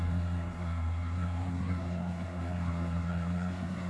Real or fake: fake